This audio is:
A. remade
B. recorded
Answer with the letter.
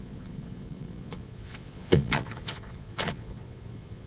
A